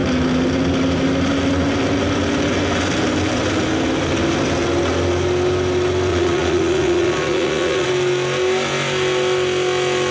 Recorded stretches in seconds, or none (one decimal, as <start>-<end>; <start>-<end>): 0.0-6.1; 7.9-10.1